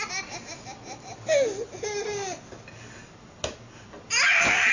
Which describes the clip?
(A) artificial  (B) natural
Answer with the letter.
B